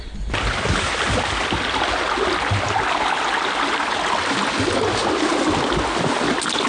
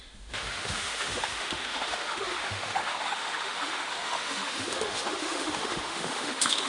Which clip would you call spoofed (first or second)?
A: second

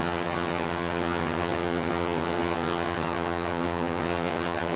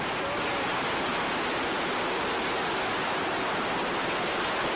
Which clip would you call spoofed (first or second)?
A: first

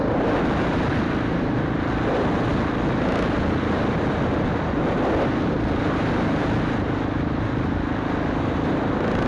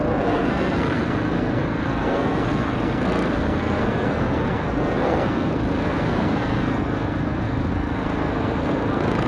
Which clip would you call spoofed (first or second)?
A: second